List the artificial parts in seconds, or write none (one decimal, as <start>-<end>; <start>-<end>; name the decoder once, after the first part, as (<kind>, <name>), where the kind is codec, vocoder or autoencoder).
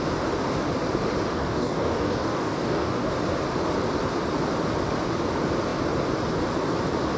1.3-3.1 (codec, DAC)